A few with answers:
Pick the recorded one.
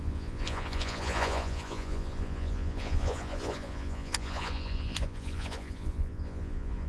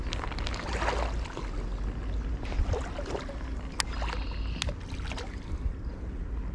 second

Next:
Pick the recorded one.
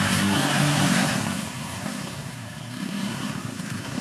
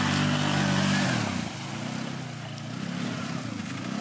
second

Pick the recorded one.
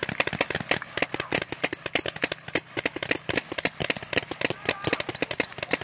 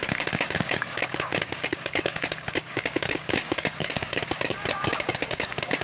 first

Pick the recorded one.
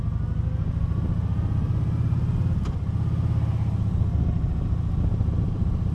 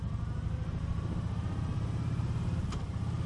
first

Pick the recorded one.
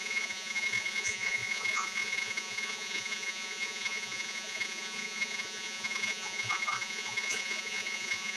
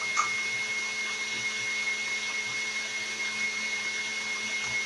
second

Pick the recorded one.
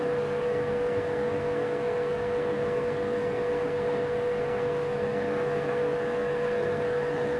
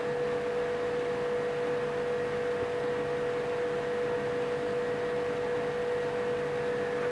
second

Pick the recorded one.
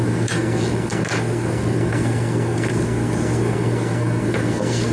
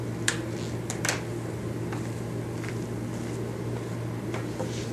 second